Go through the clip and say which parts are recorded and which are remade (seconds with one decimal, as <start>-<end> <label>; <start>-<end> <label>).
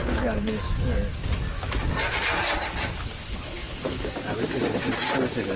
0.0-0.5 remade; 0.5-3.3 recorded; 3.3-4.1 remade; 4.1-5.6 recorded